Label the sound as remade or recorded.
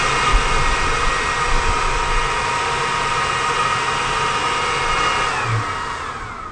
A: recorded